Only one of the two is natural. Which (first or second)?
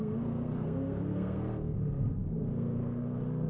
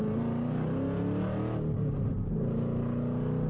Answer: second